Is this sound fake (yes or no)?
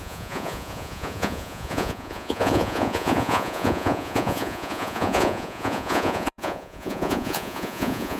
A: yes